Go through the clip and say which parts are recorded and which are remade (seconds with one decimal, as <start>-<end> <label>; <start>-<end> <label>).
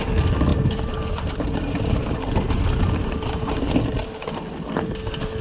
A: 0.0-0.5 recorded; 0.5-3.7 remade; 3.7-5.4 recorded